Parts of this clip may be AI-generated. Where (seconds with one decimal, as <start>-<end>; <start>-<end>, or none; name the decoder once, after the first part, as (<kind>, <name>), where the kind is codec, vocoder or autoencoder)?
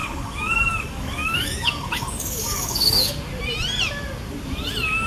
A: 0.0-3.1 (codec, DAC)